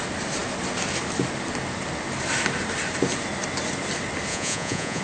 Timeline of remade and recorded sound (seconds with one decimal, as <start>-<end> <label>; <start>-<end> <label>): 0.0-4.3 recorded; 4.3-5.0 remade